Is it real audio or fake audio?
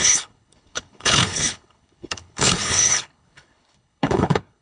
fake